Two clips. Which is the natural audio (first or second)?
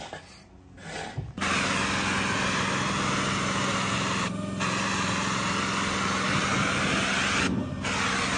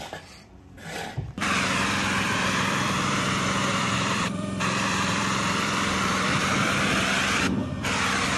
first